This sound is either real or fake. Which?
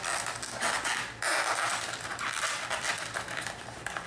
fake